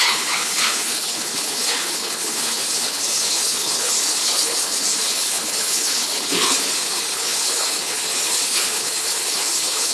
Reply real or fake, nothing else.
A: fake